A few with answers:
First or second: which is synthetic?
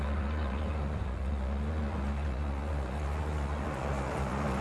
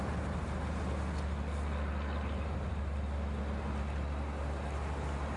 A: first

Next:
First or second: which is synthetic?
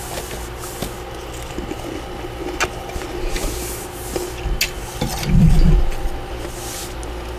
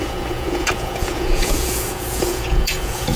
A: second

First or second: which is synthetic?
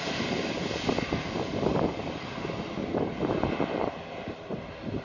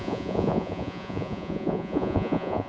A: second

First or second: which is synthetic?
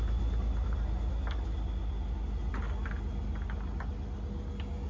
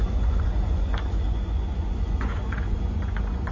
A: second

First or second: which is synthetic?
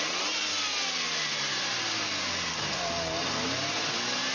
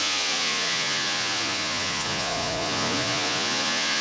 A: second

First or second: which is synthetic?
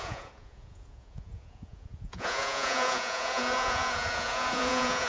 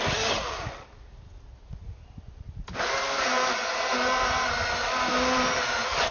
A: first